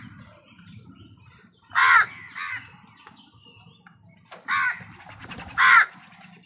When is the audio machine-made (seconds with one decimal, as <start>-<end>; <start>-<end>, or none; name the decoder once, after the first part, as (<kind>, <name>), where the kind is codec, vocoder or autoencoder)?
0.0-1.8 (vocoder, BigVGAN v2); 5.0-6.5